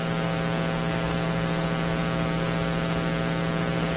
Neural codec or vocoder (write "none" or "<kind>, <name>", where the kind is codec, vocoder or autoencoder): none